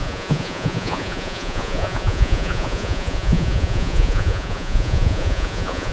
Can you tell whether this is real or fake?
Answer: fake